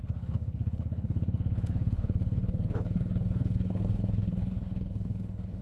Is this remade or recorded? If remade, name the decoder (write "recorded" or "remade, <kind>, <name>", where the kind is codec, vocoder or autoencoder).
remade, codec, HILCodec